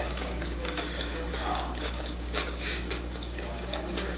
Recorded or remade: remade